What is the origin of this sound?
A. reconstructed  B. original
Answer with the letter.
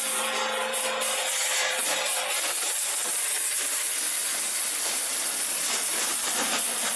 A